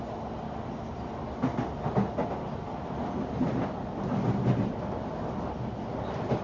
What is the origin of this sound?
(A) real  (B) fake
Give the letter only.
A